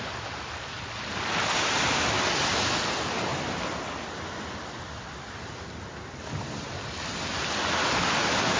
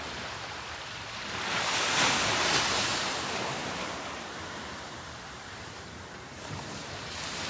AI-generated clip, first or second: second